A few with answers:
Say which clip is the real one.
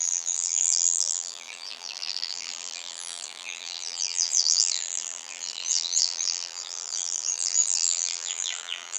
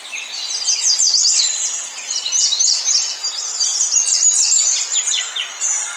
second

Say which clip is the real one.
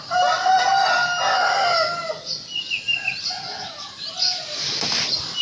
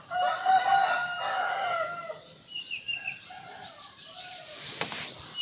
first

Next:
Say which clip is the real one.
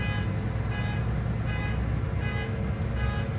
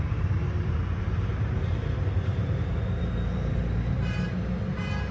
first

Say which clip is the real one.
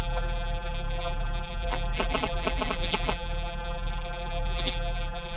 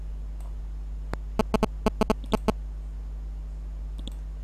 second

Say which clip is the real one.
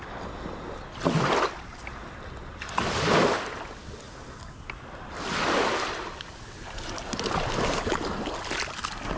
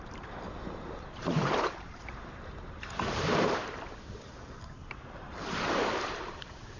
first